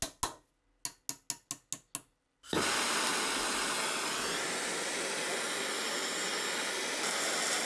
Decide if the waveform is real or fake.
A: real